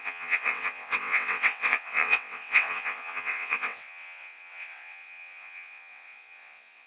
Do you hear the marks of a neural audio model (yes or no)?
yes